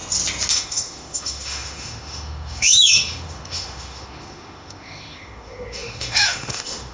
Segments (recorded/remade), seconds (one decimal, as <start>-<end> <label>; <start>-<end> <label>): 0.0-0.5 recorded; 0.5-6.9 remade